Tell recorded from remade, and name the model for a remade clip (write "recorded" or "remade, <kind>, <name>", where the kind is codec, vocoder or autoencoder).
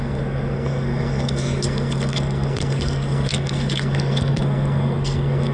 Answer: remade, codec, SNAC